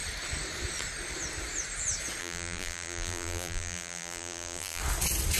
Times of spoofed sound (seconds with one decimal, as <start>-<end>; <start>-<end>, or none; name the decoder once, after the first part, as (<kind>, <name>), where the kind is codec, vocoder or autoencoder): 2.2-4.8 (vocoder, BigVGAN v2)